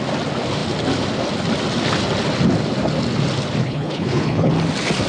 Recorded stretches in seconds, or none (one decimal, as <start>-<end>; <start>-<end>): 0.0-3.6; 4.5-5.1